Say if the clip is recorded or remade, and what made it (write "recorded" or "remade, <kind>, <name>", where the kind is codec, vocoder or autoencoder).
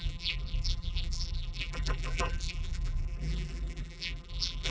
remade, vocoder, BigVGAN v2